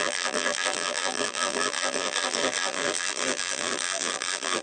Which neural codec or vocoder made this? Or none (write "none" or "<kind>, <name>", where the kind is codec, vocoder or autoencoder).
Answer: vocoder, BigVGAN v2